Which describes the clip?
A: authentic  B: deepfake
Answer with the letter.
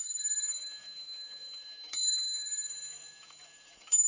B